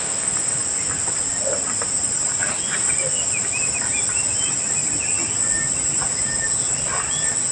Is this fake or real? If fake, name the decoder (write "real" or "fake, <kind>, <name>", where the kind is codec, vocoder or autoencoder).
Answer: real